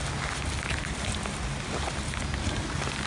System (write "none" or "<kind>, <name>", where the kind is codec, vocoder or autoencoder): none